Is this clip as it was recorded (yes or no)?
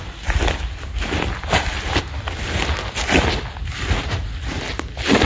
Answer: yes